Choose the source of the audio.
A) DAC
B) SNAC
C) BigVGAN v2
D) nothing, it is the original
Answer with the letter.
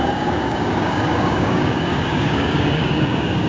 A